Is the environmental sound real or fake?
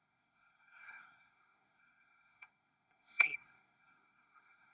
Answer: fake